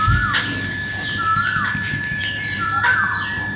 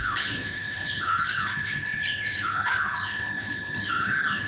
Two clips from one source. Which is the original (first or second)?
first